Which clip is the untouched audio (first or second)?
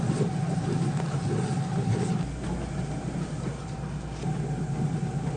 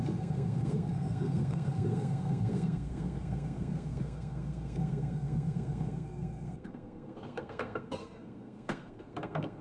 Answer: first